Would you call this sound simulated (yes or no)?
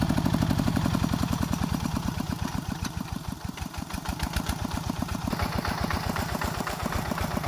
yes